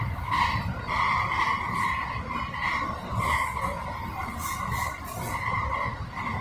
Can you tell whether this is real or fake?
real